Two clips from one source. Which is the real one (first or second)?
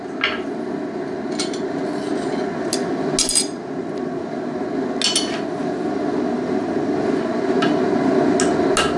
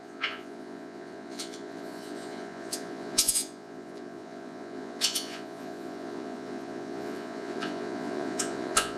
first